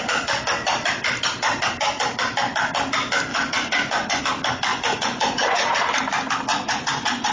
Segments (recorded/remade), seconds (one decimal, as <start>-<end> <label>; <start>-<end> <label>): 0.0-3.3 recorded; 3.3-4.2 remade; 4.2-4.7 recorded; 4.7-5.7 remade; 5.7-6.5 recorded; 6.5-7.3 remade

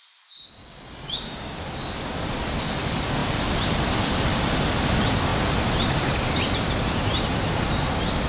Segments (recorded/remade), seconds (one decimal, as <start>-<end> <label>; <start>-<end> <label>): 0.0-0.6 recorded; 0.6-1.6 remade; 1.6-8.3 recorded

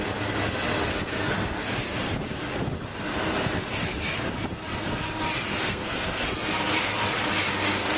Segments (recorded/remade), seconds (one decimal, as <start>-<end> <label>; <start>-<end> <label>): 0.0-0.9 recorded; 0.9-2.0 remade; 2.0-5.6 recorded; 5.6-6.5 remade; 6.5-8.0 recorded

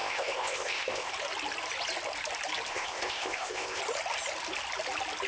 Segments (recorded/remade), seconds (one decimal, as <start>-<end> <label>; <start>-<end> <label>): 0.0-1.1 remade; 1.1-2.7 recorded; 2.7-3.8 remade; 3.8-5.3 recorded